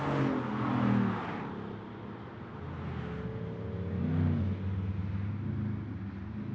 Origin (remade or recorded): recorded